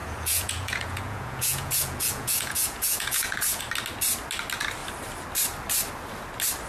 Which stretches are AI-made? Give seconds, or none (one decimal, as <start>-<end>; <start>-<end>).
0.0-3.6